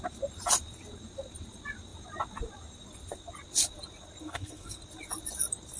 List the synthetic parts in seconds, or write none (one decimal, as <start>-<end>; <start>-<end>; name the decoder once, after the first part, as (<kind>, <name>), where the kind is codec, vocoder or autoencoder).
4.2-4.8 (codec, SNAC)